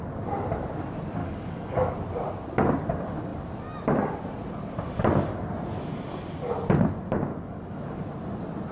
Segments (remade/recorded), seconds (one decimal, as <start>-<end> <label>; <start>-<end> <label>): 0.0-1.2 recorded; 1.2-1.9 remade; 1.9-7.3 recorded; 7.3-8.0 remade; 8.0-8.7 recorded